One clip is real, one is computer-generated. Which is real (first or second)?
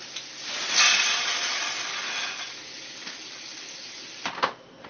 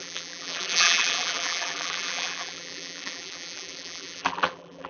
first